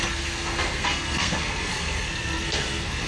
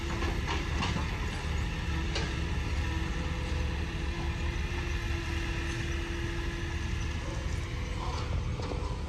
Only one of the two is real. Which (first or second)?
second